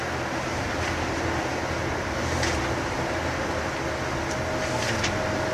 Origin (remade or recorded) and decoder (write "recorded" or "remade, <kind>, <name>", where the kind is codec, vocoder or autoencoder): recorded